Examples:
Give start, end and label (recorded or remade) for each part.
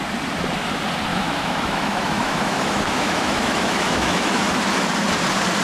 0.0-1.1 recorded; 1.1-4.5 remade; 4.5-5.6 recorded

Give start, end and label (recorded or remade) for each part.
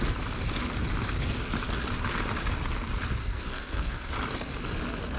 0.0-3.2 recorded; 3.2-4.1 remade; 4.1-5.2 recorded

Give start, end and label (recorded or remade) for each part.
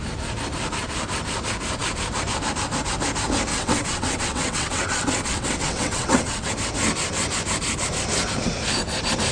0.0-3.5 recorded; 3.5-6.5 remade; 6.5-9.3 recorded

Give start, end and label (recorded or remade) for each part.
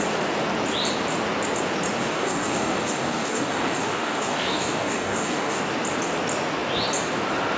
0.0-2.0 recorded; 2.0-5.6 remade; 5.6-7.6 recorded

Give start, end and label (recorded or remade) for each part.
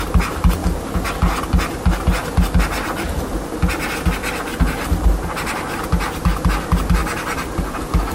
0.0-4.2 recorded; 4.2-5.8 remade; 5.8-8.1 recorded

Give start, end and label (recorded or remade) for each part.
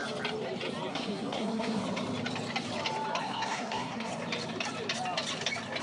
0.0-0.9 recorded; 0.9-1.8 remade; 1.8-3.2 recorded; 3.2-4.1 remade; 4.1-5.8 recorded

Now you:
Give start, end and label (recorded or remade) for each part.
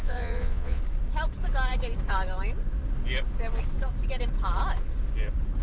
0.0-0.8 remade; 0.8-5.6 recorded